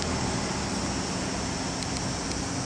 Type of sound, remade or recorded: recorded